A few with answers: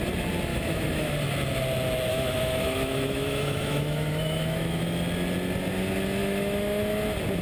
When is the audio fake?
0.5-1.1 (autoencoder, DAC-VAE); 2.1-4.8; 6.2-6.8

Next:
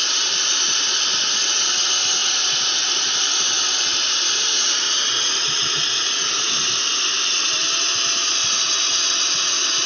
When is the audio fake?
2.2-3.2 (vocoder, Vocos); 8.4-9.5

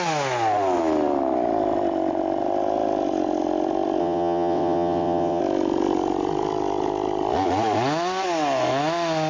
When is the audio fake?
4.0-5.4 (vocoder, WaveNeXt)

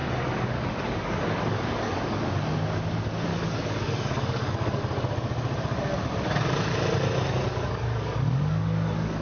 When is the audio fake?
0.0-2.2 (codec, DAC); 3.3-4.8; 7.5-9.2

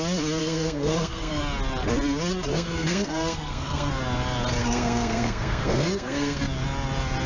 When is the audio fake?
0.4-1.4 (codec, SNAC); 2.5-3.9; 4.6-6.4

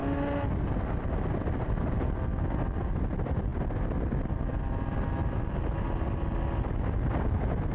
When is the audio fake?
none

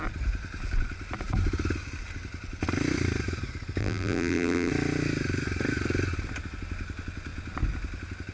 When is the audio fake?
3.8-4.7 (vocoder, BigVGAN v2)